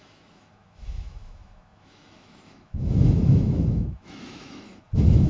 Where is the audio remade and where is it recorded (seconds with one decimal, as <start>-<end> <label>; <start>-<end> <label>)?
0.0-5.3 remade